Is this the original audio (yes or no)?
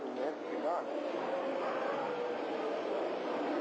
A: yes